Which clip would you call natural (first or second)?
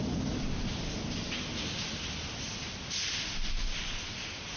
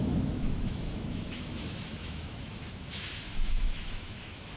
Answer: first